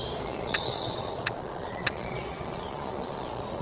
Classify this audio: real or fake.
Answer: fake